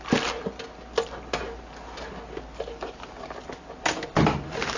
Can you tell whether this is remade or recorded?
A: recorded